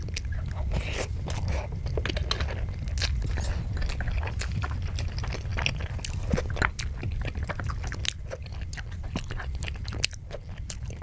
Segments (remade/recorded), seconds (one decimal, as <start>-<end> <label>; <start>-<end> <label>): 0.0-11.0 recorded